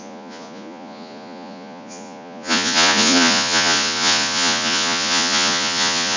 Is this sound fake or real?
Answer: fake